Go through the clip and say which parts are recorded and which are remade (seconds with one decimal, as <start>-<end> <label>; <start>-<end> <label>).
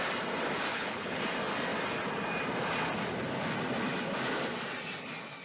0.0-0.7 recorded; 0.7-1.2 remade; 1.2-5.4 recorded